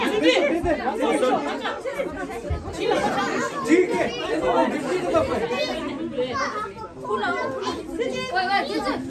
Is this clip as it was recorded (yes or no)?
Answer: yes